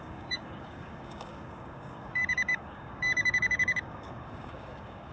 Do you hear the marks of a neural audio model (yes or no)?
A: yes